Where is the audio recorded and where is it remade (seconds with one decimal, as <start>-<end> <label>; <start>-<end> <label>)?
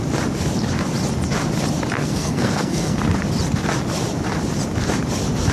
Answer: 0.0-2.0 recorded; 2.0-3.0 remade; 3.0-5.5 recorded